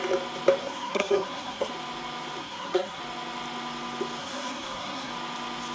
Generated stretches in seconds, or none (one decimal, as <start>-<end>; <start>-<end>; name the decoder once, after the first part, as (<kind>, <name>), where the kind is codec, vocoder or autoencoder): 0.6-1.7 (codec, SNAC); 2.4-3.0; 4.2-5.1